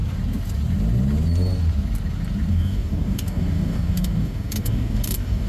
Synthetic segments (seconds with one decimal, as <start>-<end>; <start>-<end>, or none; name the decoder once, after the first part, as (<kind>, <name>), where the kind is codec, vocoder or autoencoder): 2.5-5.5 (codec, DAC)